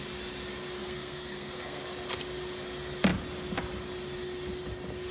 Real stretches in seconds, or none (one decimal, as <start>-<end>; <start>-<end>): 0.0-0.8; 1.8-5.1